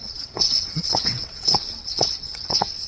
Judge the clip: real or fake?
fake